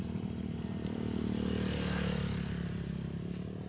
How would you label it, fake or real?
real